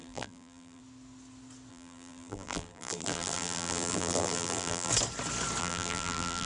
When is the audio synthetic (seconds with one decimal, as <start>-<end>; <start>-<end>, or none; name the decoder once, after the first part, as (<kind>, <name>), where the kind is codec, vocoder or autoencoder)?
0.0-0.8 (vocoder, BigVGAN v2); 1.7-4.9; 5.6-6.5